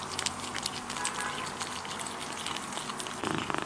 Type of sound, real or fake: real